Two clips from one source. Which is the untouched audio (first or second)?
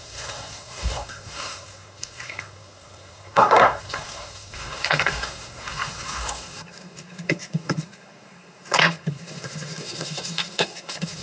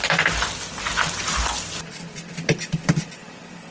second